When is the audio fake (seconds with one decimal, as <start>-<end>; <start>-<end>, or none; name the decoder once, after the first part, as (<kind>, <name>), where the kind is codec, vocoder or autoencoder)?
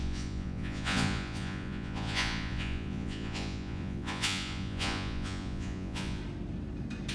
0.0-6.2 (vocoder, Vocos)